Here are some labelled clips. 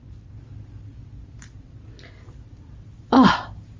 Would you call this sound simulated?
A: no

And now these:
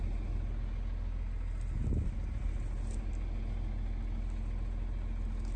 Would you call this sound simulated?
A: no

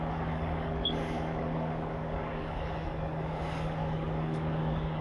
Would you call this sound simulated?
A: yes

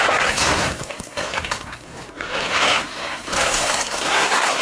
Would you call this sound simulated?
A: yes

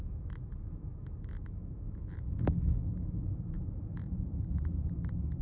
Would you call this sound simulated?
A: yes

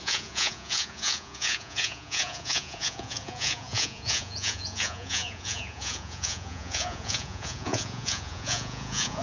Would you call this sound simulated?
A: yes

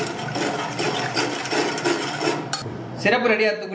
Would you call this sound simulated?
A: yes